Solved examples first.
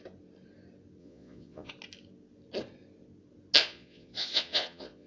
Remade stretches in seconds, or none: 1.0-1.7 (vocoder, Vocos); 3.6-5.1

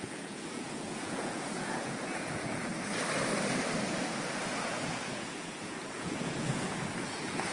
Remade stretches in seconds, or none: 0.0-2.7 (vocoder, Vocos); 4.6-7.5

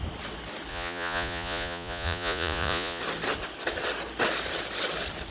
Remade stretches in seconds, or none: 0.7-3.0 (vocoder, Vocos)

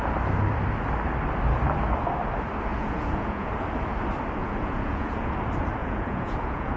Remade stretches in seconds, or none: 2.7-3.5 (vocoder, Vocos); 4.4-5.3; 5.8-6.8

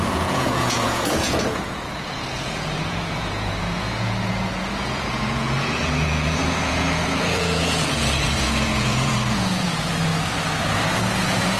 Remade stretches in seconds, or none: 0.0-10.1 (vocoder, Vocos); 10.9-11.6